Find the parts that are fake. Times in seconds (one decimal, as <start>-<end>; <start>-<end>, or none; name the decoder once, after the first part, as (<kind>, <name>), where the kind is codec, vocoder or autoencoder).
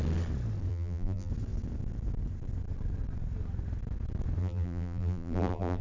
0.7-1.3 (vocoder, BigVGAN v2); 4.4-5.8